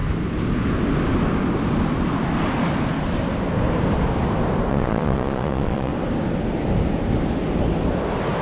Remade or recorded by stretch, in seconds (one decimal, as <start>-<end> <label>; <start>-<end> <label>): 0.0-4.7 recorded; 4.7-5.9 remade; 5.9-8.4 recorded